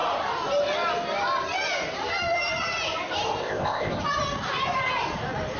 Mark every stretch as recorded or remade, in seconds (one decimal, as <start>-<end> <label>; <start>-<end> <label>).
0.0-3.4 recorded; 3.4-3.9 remade; 3.9-5.6 recorded